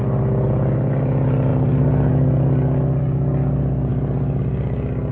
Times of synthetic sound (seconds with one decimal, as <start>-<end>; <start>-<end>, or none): 1.5-2.1; 3.9-4.4